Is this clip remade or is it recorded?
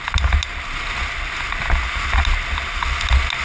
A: recorded